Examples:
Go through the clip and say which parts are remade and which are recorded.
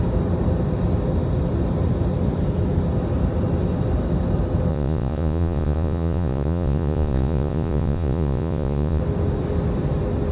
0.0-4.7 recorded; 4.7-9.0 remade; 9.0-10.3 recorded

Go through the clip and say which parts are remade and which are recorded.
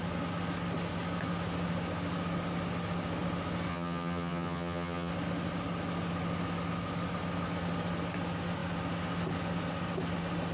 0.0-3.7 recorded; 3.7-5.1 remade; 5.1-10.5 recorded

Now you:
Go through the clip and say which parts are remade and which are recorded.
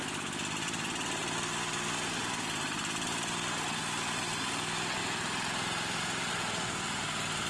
0.0-5.0 recorded; 5.0-6.3 remade; 6.3-7.5 recorded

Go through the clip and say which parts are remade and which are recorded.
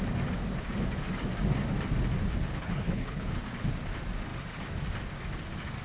0.0-2.5 recorded; 2.5-3.3 remade; 3.3-5.8 recorded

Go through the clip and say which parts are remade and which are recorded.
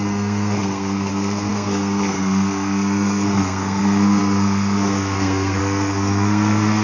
0.0-6.8 remade